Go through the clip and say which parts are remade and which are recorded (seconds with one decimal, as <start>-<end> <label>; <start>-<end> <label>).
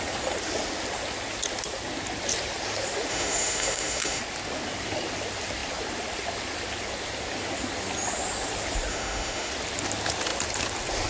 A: 0.0-3.1 recorded; 3.1-4.2 remade; 4.2-8.9 recorded; 8.9-9.5 remade; 9.5-11.1 recorded